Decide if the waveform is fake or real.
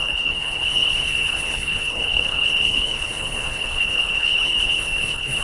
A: fake